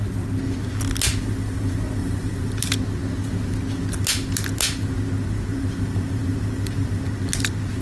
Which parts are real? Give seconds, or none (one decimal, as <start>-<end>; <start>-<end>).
0.0-2.0; 2.5-5.5; 7.0-7.8